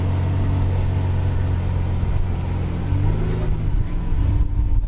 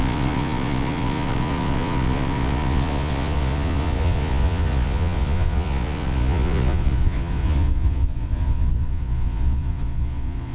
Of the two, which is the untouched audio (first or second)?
first